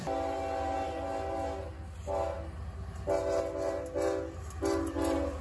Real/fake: real